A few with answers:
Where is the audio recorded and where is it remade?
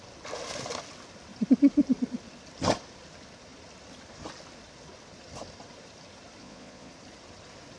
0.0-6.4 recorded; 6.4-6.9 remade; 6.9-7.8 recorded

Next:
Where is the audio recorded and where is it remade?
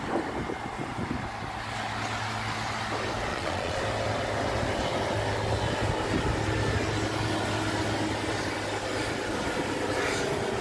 0.0-3.3 recorded; 3.3-3.8 remade; 3.8-10.6 recorded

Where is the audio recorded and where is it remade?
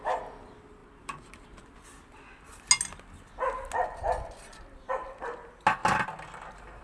0.0-6.8 recorded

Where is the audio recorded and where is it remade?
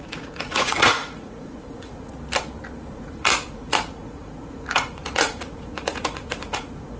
0.0-2.1 remade; 2.1-2.9 recorded; 2.9-7.0 remade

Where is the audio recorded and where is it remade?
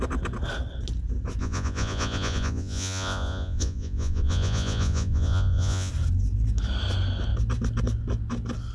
0.0-1.4 recorded; 1.4-5.9 remade; 5.9-8.7 recorded